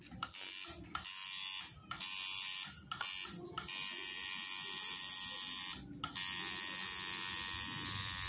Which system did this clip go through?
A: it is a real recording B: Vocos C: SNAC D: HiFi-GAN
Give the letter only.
A